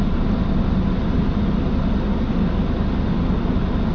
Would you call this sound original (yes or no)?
yes